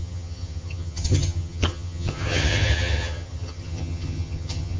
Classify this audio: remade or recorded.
remade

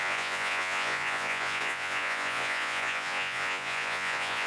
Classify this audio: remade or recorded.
remade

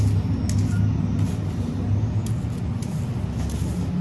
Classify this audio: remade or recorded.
recorded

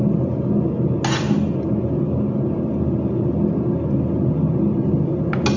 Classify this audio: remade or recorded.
recorded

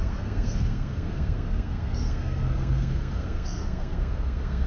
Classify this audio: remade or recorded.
remade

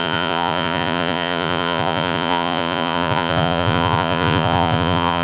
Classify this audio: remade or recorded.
remade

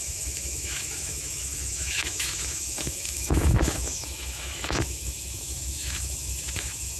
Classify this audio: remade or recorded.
remade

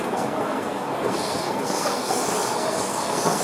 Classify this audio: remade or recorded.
remade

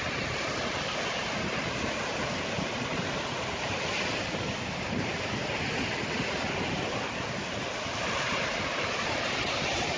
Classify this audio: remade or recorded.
recorded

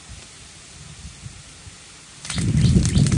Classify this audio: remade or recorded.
recorded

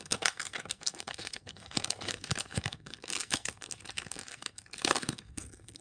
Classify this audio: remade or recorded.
remade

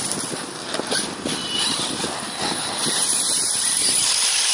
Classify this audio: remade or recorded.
remade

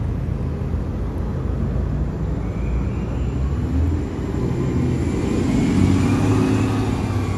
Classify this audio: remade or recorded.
recorded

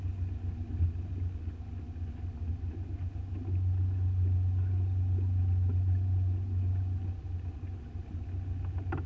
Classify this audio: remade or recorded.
recorded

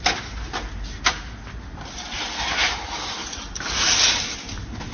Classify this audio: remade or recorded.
recorded